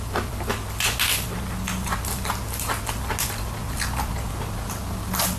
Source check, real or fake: real